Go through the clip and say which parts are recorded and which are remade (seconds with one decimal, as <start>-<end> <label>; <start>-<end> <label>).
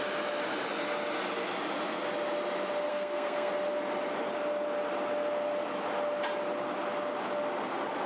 0.0-2.9 recorded; 2.9-3.5 remade; 3.5-8.1 recorded